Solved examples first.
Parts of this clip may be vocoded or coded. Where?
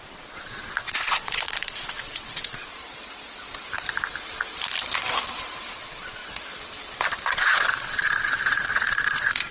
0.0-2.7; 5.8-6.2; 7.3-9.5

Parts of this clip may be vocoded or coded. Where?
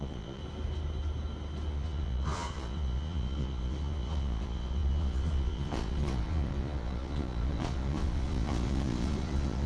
0.0-0.4; 1.7-9.7